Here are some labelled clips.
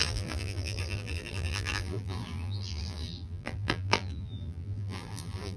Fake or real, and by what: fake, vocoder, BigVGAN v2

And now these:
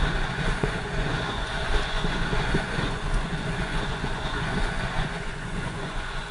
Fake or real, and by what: fake, vocoder, Vocos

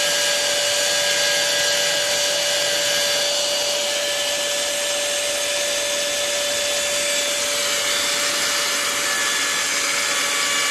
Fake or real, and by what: real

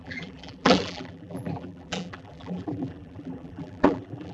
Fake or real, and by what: fake, vocoder, BigVGAN v2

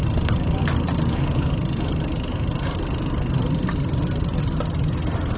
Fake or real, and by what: real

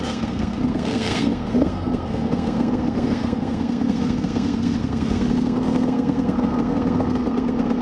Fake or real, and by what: fake, codec, SNAC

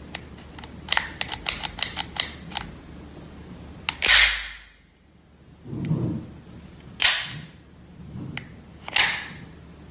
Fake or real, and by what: real